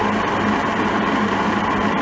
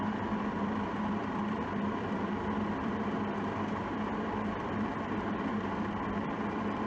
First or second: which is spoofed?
second